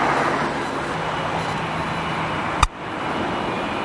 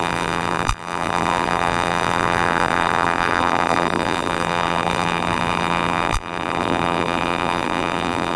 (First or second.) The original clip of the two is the first